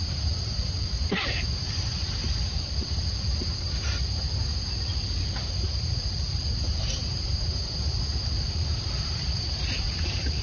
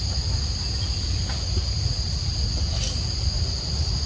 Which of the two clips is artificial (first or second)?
first